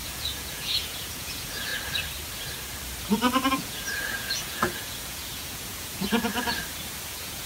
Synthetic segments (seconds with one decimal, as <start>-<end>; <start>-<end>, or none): 0.0-1.7; 3.5-6.3; 7.1-7.5